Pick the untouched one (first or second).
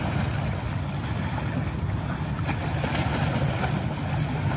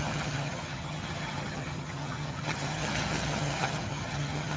first